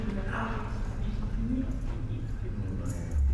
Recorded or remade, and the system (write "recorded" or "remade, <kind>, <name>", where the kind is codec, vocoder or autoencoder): recorded